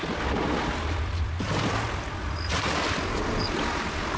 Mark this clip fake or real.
real